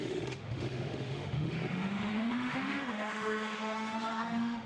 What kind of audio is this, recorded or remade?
remade